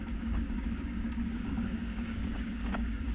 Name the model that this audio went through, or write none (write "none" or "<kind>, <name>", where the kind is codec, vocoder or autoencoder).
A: codec, DAC